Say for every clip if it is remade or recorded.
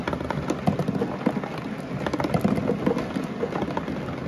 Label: recorded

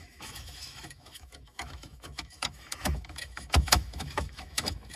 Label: remade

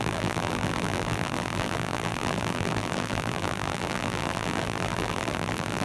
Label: remade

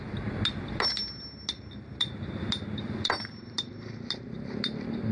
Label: recorded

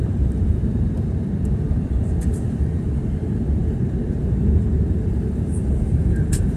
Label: remade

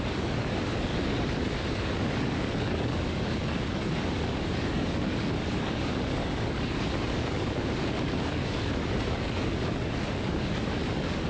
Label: remade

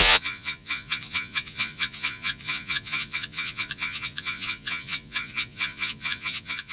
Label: remade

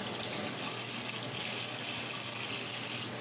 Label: recorded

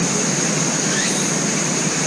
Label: remade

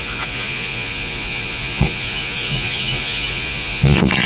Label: remade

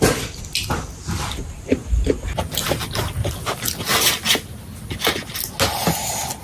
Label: recorded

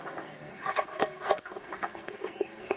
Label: remade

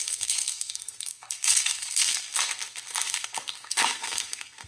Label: remade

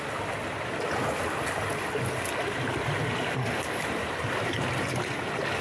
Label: recorded